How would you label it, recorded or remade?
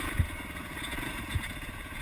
remade